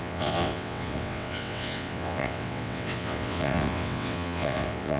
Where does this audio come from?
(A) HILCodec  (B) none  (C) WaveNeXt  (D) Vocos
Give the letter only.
C